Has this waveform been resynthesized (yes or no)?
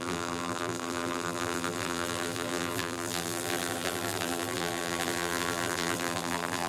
yes